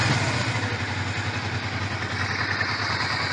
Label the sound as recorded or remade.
recorded